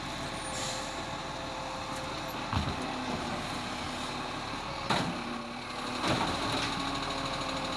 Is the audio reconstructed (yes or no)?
no